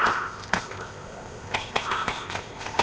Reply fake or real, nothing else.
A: fake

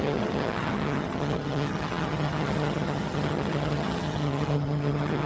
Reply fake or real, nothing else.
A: fake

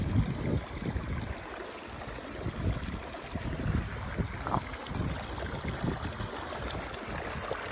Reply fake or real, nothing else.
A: real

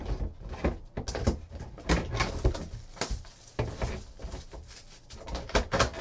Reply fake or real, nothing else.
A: real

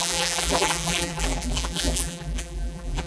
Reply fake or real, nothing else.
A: fake